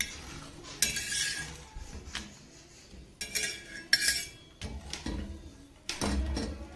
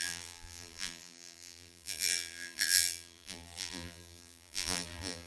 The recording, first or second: first